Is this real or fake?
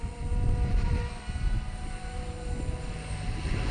fake